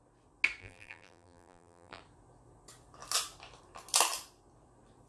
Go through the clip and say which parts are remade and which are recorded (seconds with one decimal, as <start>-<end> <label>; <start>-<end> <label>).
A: 0.0-0.6 recorded; 0.6-2.0 remade; 2.0-5.1 recorded